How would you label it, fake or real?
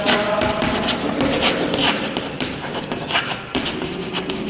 real